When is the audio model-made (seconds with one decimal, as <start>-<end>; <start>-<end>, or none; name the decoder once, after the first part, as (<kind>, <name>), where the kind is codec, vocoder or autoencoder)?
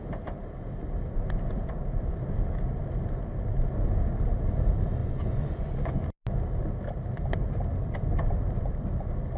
5.0-5.9 (vocoder, Vocos)